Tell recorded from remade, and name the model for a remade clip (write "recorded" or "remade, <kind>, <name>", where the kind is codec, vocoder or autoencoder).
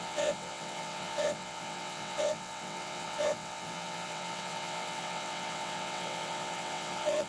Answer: remade, vocoder, WaveNeXt